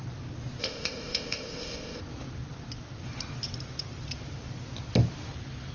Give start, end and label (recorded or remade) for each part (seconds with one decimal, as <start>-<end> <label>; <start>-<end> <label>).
0.0-0.6 recorded; 0.6-2.0 remade; 2.0-5.7 recorded